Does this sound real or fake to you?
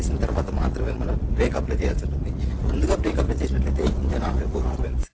fake